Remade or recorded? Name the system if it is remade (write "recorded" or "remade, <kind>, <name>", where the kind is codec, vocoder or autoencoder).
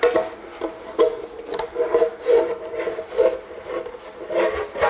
recorded